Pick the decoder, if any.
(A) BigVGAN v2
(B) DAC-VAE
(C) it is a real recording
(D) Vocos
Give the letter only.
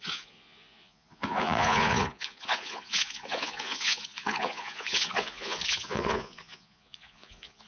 D